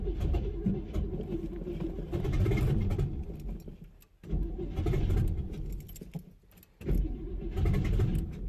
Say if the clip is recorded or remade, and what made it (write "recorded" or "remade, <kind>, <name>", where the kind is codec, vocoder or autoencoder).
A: recorded